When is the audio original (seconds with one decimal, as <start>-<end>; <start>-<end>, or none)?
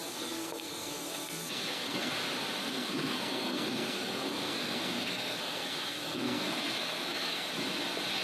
2.1-2.6; 7.5-8.2